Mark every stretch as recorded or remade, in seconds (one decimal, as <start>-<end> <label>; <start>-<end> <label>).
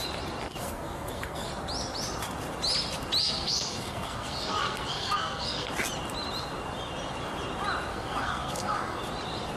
0.0-0.6 recorded; 0.6-1.5 remade; 1.5-3.2 recorded; 3.2-5.7 remade; 5.7-7.9 recorded; 7.9-9.0 remade; 9.0-9.6 recorded